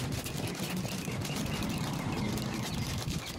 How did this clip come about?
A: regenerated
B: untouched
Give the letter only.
B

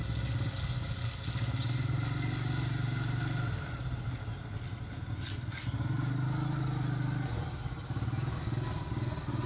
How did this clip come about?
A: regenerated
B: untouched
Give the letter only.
B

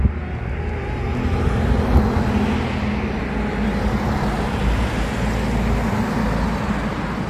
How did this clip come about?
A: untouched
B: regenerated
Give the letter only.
A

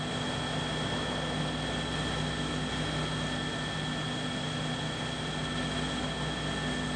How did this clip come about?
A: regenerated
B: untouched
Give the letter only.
B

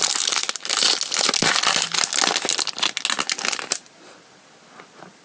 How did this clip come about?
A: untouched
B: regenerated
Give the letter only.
A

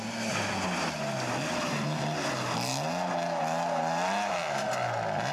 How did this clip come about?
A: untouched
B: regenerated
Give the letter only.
A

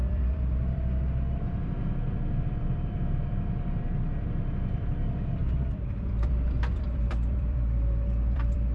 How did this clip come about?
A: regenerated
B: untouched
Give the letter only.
A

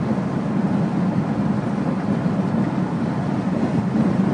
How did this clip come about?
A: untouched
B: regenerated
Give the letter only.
A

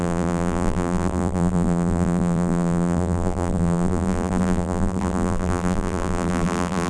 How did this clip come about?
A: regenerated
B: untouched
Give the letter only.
A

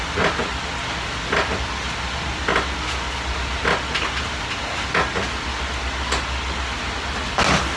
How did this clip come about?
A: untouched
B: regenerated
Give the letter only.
A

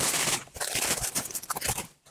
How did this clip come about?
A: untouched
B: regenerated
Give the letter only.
B